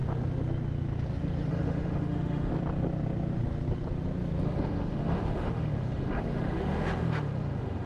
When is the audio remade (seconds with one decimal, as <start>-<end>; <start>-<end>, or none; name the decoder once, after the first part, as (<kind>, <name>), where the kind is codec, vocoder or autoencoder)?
1.5-2.5 (autoencoder, DAC-VAE); 4.4-7.9